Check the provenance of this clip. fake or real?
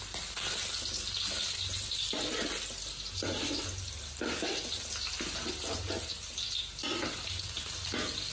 real